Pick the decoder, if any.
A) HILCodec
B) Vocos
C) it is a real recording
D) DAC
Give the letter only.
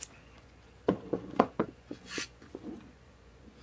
B